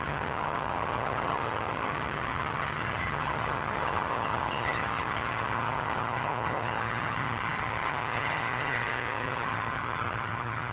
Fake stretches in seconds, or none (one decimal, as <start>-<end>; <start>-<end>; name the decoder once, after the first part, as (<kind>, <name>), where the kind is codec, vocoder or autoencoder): 0.0-10.7 (vocoder, HiFi-GAN)